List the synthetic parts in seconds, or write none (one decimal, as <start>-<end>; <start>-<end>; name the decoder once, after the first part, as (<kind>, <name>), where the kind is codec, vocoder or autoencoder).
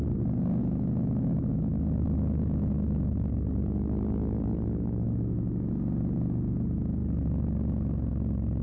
0.6-5.7 (autoencoder, DAC-VAE)